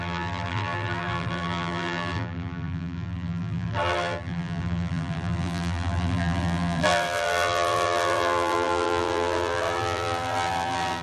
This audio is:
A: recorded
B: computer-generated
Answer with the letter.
B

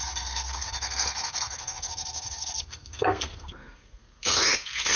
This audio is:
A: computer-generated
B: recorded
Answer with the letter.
A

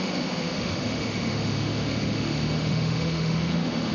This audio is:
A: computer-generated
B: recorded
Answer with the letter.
A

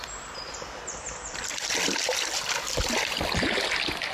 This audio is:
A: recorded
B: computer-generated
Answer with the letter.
A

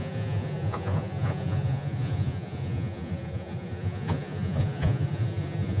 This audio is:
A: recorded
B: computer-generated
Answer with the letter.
B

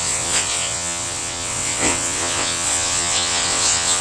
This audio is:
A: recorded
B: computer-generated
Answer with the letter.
B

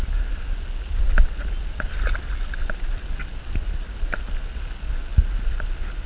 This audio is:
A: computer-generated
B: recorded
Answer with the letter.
B